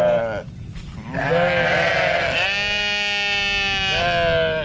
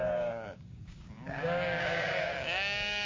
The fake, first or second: second